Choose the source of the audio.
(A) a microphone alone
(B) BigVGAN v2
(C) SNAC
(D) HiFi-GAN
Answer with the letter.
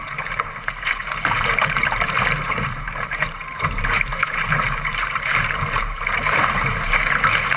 B